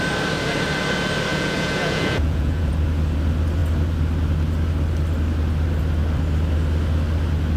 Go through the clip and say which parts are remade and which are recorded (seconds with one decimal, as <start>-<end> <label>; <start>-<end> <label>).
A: 0.0-1.3 recorded; 1.3-2.7 remade; 2.7-7.6 recorded